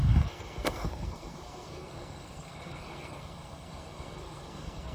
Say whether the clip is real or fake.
fake